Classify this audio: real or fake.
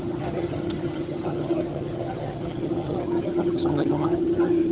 fake